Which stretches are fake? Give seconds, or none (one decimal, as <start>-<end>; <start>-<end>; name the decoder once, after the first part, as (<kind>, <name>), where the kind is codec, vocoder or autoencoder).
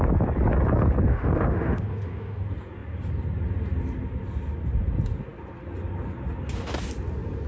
1.1-2.4 (autoencoder, DAC-VAE)